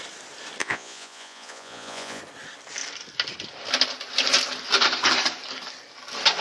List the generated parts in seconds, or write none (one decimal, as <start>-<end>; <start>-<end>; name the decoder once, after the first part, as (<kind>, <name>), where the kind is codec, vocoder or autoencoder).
0.6-2.2 (vocoder, Vocos)